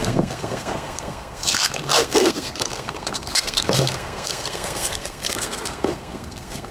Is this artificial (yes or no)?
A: yes